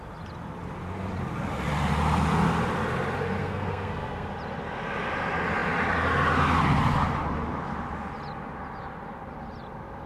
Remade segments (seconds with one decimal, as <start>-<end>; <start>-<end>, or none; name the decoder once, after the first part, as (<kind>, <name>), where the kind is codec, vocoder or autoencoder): 3.4-4.3 (codec, SNAC)